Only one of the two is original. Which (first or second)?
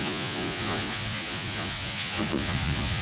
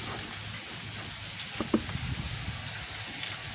second